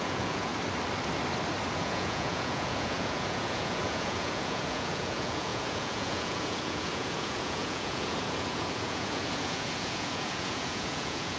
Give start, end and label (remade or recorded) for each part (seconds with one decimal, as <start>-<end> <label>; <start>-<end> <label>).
0.0-0.5 remade; 0.5-1.7 recorded; 1.7-11.4 remade